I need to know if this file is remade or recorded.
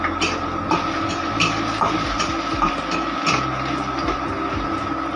recorded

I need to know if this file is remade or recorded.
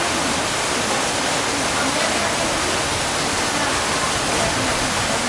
recorded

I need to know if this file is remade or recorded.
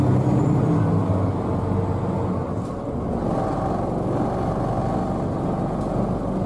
recorded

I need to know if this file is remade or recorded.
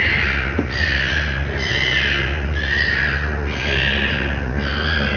remade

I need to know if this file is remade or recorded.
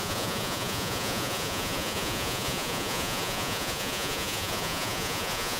remade